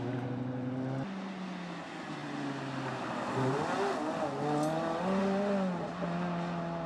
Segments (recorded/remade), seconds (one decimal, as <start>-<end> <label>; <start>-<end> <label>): 0.0-6.9 recorded